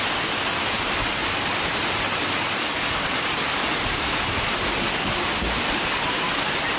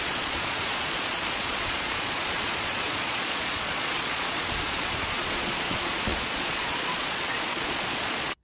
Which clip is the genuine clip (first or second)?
first